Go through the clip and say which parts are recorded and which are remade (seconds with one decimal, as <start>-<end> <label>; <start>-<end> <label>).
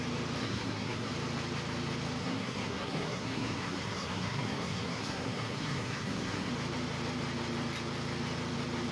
0.0-0.4 recorded; 0.4-1.1 remade; 1.1-2.2 recorded; 2.2-6.5 remade; 6.5-8.9 recorded